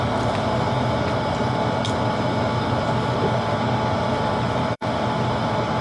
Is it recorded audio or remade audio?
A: remade